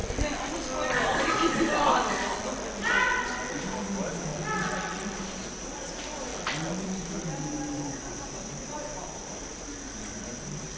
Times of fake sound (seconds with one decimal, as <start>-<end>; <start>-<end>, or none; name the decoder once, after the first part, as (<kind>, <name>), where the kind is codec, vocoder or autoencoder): 3.6-4.3 (vocoder, BigVGAN v2); 5.1-6.3; 6.8-10.8